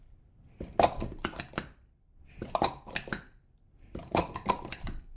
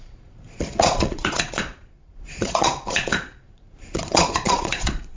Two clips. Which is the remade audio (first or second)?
second